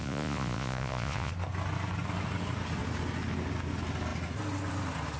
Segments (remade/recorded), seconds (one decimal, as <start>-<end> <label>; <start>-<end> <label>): 0.0-1.3 remade; 1.3-5.2 recorded